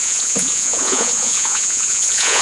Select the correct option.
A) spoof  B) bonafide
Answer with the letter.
A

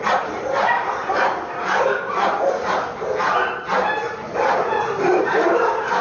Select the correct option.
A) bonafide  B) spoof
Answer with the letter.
A